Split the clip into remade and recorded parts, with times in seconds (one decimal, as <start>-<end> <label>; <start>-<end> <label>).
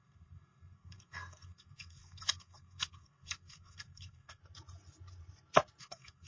0.0-4.4 remade; 4.4-5.8 recorded; 5.8-6.3 remade